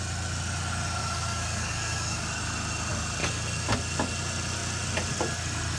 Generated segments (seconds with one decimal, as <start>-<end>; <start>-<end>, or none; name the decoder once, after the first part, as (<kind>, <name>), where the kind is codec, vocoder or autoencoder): 1.0-2.4 (codec, DAC)